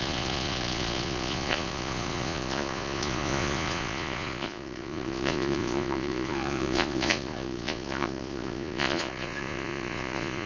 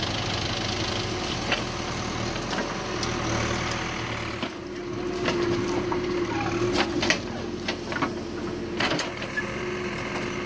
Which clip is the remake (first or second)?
first